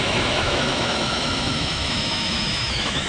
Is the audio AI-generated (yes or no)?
yes